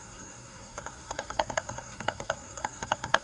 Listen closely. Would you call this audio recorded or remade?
remade